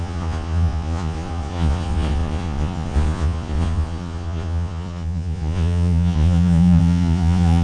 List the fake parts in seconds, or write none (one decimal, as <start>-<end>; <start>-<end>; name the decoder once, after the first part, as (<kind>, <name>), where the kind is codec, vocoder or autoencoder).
0.0-7.6 (vocoder, Vocos)